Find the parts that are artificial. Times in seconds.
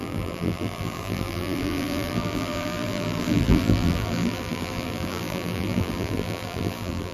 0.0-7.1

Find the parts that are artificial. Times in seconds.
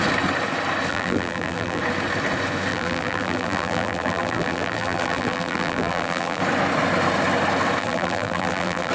0.9-1.8; 2.7-6.4; 7.8-8.9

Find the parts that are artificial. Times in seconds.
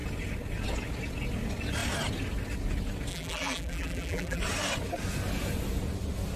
3.1-4.4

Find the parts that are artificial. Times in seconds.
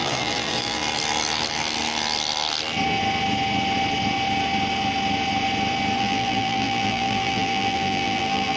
0.0-0.8; 6.0-8.6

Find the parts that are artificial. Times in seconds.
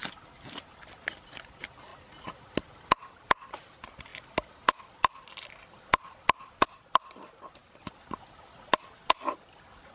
0.0-1.9; 3.1-4.1; 4.8-9.9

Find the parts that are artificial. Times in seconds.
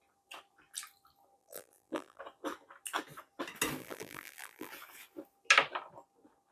1.4-2.2; 3.8-4.7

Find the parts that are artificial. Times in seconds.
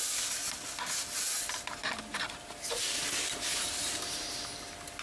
2.1-3.0; 3.5-4.3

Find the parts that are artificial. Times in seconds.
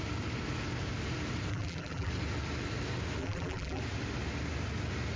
1.5-2.1; 3.2-3.8